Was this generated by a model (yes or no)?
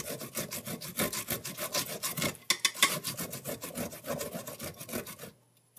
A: no